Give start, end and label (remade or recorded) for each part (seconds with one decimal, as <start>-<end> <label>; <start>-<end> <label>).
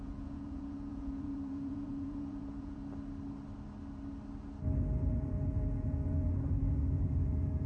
0.0-2.8 remade; 2.8-5.1 recorded; 5.1-7.7 remade